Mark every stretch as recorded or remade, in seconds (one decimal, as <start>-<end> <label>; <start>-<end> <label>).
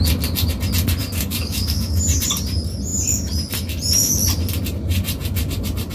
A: 0.0-1.0 recorded; 1.0-2.0 remade; 2.0-5.9 recorded